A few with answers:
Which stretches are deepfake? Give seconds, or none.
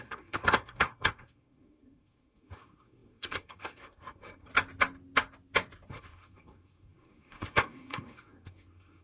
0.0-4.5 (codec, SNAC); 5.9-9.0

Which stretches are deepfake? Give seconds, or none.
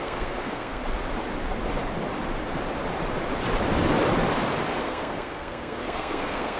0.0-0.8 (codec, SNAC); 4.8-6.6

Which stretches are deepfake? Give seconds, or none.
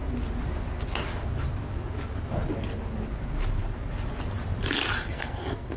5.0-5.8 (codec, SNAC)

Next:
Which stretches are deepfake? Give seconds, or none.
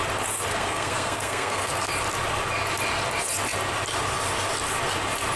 0.5-1.9 (codec, SNAC)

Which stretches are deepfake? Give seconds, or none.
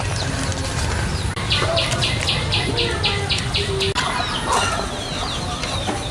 none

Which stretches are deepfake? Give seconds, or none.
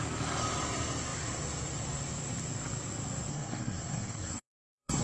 3.3-5.0 (codec, SNAC)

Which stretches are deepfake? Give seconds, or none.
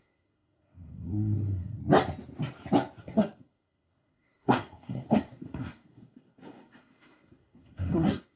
0.0-1.8 (codec, SNAC); 3.0-8.4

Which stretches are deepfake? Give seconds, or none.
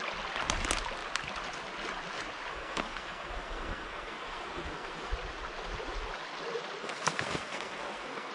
2.5-5.1 (codec, SNAC); 6.8-8.3